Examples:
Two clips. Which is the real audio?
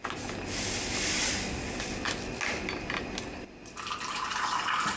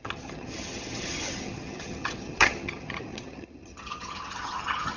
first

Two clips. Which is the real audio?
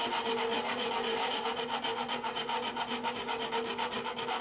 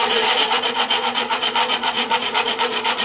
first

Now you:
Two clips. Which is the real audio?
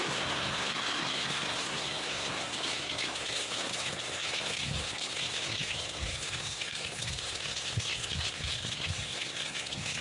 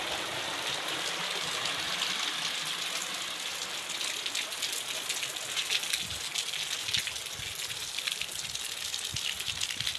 second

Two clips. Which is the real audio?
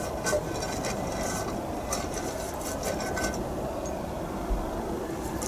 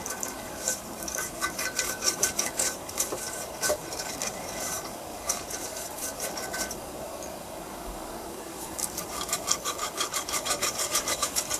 first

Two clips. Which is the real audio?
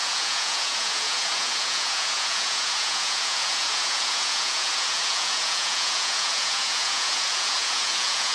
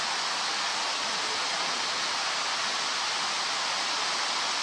second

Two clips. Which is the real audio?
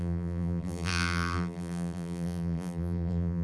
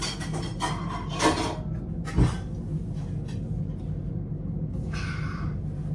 second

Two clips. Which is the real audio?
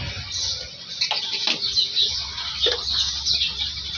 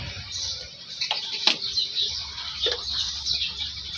first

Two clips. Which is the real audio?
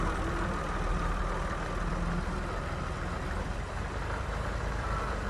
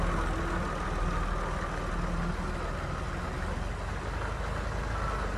second